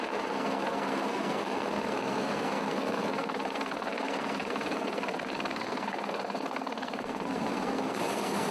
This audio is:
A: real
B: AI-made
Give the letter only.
B